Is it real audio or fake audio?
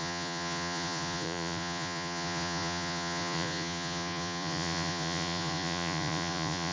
fake